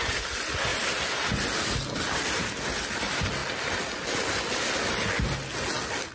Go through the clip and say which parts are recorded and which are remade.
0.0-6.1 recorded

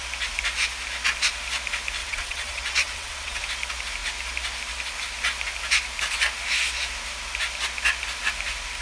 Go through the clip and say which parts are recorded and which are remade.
0.0-2.0 recorded; 2.0-3.4 remade; 3.4-8.8 recorded